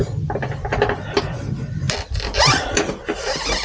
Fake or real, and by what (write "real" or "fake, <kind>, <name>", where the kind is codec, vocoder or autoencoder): real